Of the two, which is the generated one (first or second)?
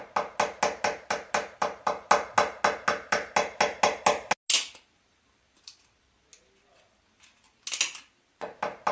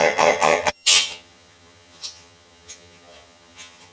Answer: second